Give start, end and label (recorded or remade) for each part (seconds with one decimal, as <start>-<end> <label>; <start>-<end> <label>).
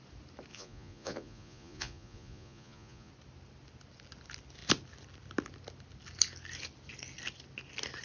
0.0-0.5 recorded; 0.5-3.1 remade; 3.1-8.0 recorded